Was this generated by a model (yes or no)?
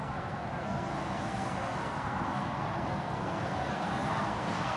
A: yes